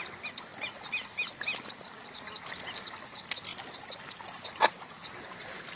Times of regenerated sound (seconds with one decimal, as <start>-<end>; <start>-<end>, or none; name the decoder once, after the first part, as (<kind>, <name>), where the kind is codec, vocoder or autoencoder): 0.5-3.0 (vocoder, BigVGAN v2)